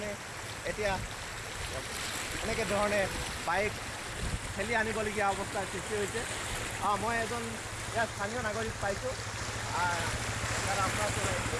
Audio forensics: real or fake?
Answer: real